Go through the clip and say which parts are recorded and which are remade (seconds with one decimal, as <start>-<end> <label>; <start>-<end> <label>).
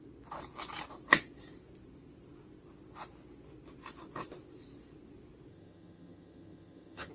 0.0-5.5 recorded; 5.5-7.1 remade